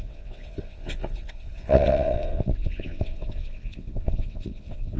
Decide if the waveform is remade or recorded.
remade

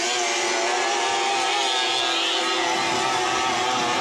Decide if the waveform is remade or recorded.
recorded